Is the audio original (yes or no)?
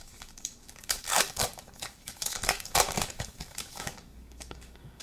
no